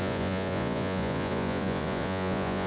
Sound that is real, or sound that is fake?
fake